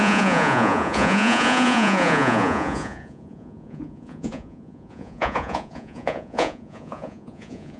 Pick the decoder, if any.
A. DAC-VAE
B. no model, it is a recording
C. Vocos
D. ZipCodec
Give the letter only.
C